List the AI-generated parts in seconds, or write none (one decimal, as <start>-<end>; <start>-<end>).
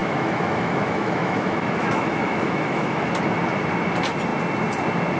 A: 0.0-3.1